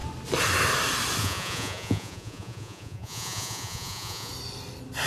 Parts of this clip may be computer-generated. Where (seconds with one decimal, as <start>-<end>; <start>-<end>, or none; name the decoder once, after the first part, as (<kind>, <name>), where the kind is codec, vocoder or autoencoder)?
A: 1.2-4.3 (vocoder, Vocos)